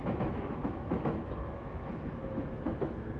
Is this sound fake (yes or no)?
yes